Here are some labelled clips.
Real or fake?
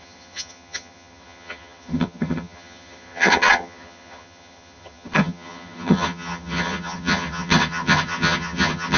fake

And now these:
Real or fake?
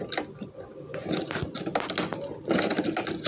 real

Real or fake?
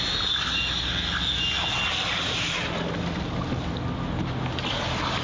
real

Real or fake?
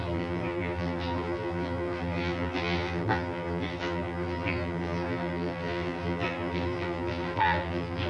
fake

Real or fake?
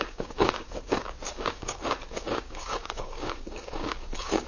fake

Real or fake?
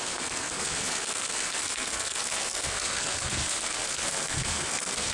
fake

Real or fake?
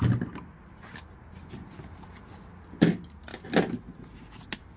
real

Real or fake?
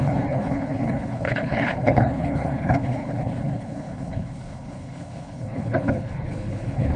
fake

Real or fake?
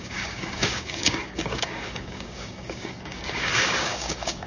fake